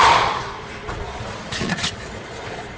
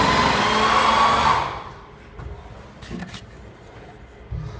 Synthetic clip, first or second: first